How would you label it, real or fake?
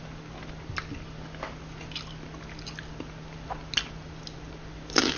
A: real